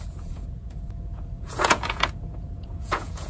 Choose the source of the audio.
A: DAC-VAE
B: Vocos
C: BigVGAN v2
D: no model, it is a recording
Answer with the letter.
B